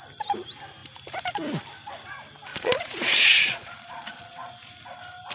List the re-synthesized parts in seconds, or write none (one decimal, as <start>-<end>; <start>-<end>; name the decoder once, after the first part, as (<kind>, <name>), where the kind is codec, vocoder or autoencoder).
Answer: 2.5-4.5 (vocoder, Vocos)